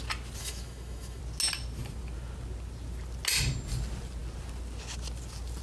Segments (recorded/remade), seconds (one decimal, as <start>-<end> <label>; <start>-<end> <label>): 0.0-0.4 recorded; 0.4-1.2 remade; 1.2-5.6 recorded